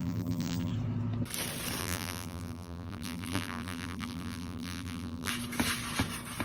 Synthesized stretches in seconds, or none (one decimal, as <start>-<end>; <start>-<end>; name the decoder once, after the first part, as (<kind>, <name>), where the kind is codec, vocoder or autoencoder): 0.0-0.7 (vocoder, BigVGAN v2); 1.8-5.3